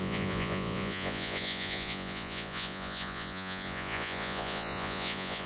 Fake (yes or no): yes